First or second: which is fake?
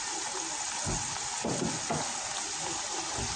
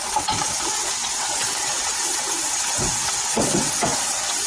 second